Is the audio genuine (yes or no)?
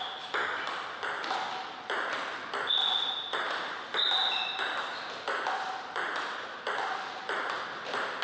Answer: yes